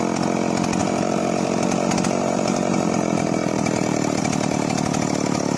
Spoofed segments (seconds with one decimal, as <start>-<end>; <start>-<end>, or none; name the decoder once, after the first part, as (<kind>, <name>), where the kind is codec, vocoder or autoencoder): 0.8-4.2 (vocoder, BigVGAN v2)